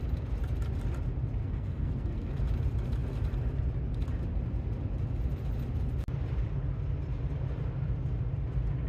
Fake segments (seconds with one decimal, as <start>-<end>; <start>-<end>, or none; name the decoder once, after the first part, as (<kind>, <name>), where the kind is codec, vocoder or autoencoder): 1.4-2.3 (codec, SNAC)